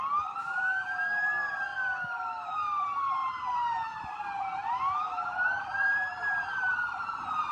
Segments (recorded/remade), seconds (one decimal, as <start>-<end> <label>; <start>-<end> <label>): 0.0-5.3 recorded; 5.3-7.0 remade; 7.0-7.5 recorded